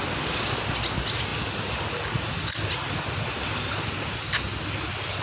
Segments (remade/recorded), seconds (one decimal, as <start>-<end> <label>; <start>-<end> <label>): 0.0-1.3 recorded; 1.3-3.4 remade; 3.4-5.2 recorded